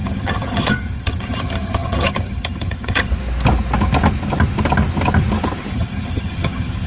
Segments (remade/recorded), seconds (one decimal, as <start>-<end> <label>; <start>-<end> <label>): 0.0-3.1 remade; 3.1-5.7 recorded; 5.7-6.9 remade